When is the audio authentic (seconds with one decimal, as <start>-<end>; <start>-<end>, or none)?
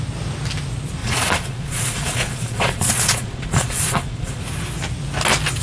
0.0-1.0; 4.4-5.6